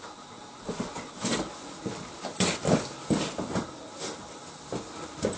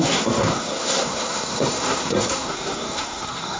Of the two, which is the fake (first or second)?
second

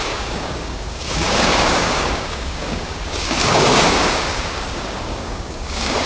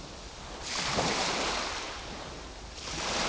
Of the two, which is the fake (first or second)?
first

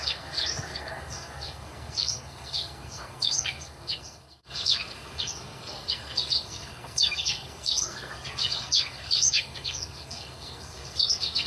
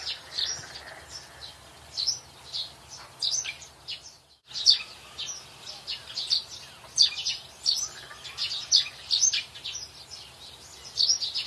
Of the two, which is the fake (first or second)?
first